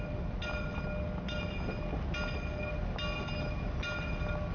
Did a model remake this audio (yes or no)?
no